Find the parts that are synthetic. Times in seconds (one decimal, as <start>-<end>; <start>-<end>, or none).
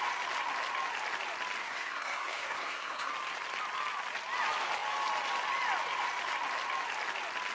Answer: 1.6-3.1